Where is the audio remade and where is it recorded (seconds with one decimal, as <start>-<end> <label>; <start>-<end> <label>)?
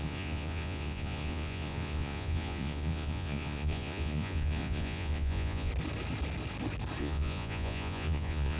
0.0-5.7 remade; 5.7-7.0 recorded; 7.0-8.6 remade